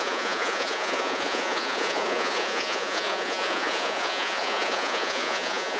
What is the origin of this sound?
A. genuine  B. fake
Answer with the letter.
B